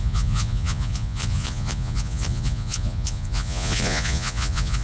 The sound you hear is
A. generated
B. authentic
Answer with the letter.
A